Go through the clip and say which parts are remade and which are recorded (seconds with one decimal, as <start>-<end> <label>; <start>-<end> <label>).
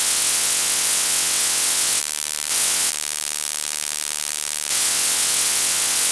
0.0-2.0 remade; 2.0-2.5 recorded; 2.5-2.9 remade; 2.9-4.7 recorded; 4.7-6.1 remade